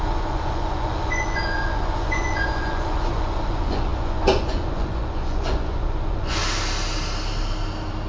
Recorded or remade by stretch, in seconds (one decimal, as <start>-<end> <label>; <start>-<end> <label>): 0.0-6.4 remade; 6.4-8.1 recorded